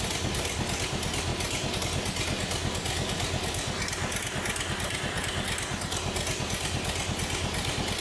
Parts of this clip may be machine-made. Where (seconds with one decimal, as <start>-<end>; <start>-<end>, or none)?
none